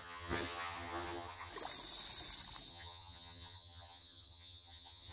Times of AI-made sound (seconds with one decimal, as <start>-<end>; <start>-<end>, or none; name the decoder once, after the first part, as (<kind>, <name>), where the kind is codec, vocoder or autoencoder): 0.0-1.5 (vocoder, HiFi-GAN); 2.7-5.1